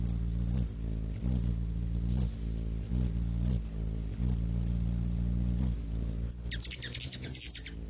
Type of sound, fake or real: real